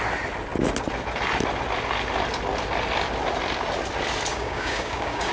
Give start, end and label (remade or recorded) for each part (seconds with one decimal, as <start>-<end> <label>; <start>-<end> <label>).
0.0-4.3 recorded; 4.3-5.3 remade